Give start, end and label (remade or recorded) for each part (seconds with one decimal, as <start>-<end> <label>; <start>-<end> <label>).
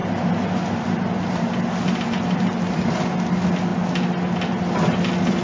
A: 0.0-5.4 recorded